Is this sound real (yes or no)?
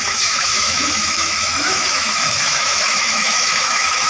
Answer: no